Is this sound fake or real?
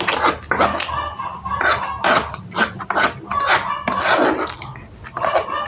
real